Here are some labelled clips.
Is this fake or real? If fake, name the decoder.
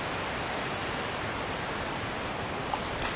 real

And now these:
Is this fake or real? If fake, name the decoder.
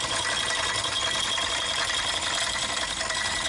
real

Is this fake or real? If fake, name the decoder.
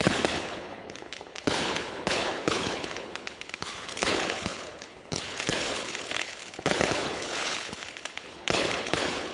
fake, codec, HILCodec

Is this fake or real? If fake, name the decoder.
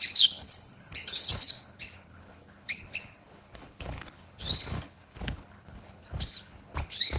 fake, codec, HILCodec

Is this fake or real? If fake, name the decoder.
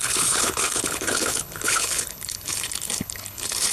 fake, codec, HILCodec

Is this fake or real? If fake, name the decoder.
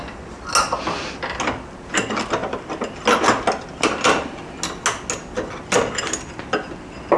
real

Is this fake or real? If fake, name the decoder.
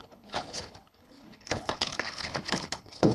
fake, codec, HILCodec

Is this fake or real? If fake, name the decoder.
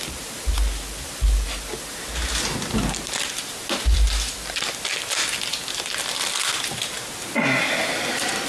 real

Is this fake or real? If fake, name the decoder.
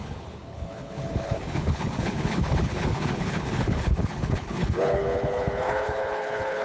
fake, codec, HILCodec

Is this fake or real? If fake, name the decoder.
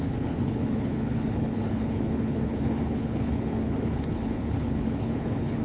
fake, codec, HILCodec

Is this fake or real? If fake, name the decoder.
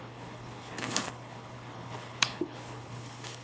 fake, codec, HILCodec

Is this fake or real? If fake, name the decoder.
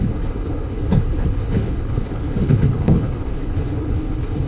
fake, codec, HILCodec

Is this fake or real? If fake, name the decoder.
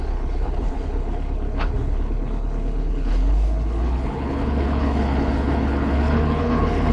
fake, codec, HILCodec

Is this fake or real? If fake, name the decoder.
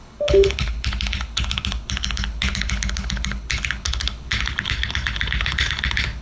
fake, codec, HILCodec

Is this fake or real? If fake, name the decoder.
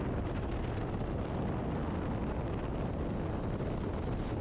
real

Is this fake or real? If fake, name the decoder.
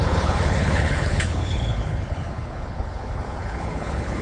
fake, codec, HILCodec